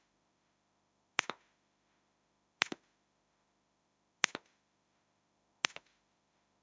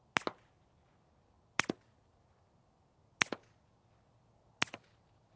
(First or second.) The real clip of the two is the second